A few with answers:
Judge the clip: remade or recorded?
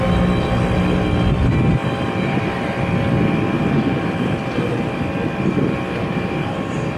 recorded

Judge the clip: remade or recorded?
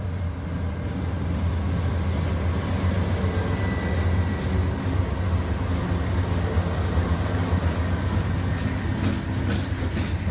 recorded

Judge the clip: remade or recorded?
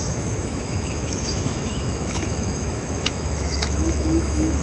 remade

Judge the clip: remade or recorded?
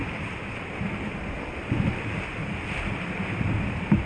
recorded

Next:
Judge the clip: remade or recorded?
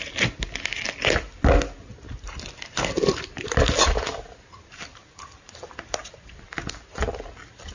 recorded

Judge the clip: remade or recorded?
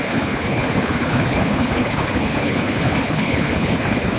remade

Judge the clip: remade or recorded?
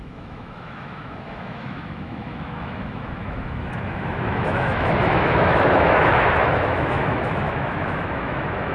remade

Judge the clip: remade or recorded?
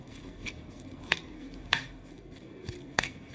remade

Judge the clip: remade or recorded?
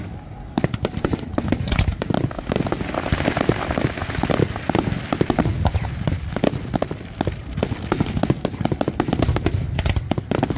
recorded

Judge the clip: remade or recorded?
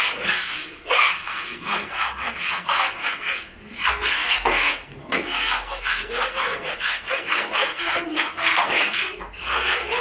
remade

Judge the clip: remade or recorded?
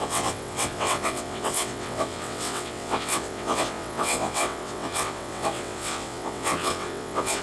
remade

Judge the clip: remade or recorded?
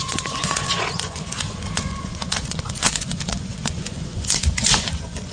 remade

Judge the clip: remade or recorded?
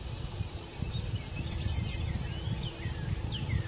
recorded